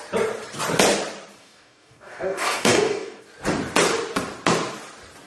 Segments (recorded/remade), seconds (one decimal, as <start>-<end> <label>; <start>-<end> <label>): 0.0-1.4 recorded; 1.4-3.2 remade; 3.2-5.3 recorded

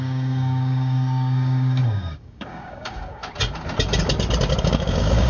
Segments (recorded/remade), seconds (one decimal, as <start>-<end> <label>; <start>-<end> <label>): 0.0-3.2 remade; 3.2-4.6 recorded; 4.6-5.3 remade

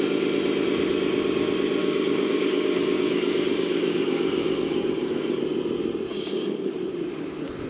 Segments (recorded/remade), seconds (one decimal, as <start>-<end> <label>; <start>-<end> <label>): 0.0-1.8 recorded; 1.8-5.4 remade; 5.4-6.1 recorded; 6.1-6.7 remade; 6.7-7.7 recorded